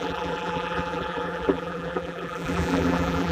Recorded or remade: remade